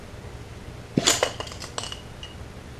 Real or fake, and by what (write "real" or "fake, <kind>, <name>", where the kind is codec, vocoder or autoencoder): real